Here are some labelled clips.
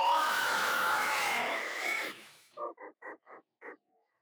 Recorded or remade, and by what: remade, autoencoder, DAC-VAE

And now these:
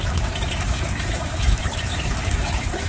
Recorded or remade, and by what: remade, autoencoder, DAC-VAE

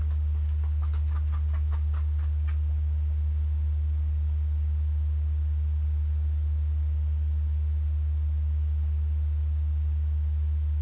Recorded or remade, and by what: recorded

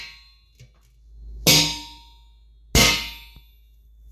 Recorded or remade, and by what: recorded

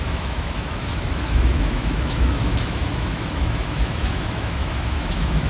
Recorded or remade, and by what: remade, autoencoder, DAC-VAE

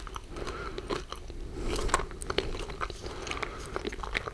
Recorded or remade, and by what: recorded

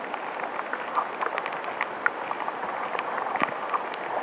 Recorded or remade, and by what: recorded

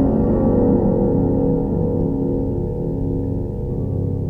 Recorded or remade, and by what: recorded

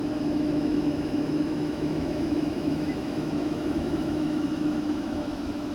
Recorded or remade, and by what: remade, autoencoder, DAC-VAE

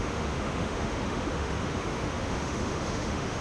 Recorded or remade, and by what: remade, autoencoder, DAC-VAE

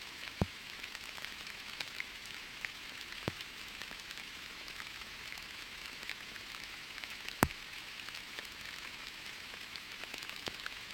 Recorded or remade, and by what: remade, autoencoder, DAC-VAE